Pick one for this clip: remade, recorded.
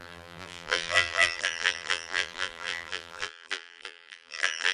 remade